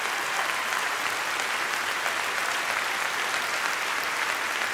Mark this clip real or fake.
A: real